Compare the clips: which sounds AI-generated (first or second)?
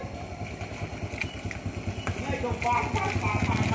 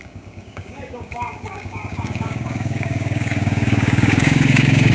second